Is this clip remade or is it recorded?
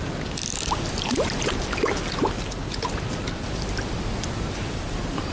recorded